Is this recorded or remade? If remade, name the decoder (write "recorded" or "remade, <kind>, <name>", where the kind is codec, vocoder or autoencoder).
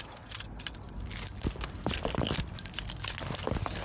recorded